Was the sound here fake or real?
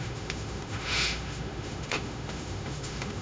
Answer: fake